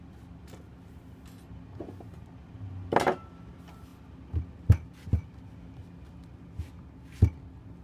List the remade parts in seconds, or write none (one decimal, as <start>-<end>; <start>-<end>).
none